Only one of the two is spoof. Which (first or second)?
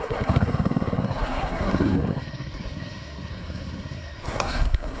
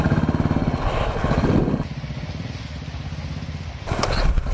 first